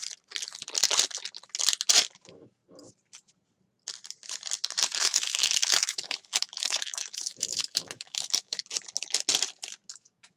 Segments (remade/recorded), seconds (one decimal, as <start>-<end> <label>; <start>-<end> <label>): 0.0-2.2 recorded; 2.2-2.6 remade; 2.6-5.0 recorded; 5.0-8.6 remade; 8.6-9.9 recorded; 9.9-10.4 remade